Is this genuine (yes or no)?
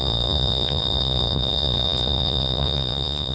no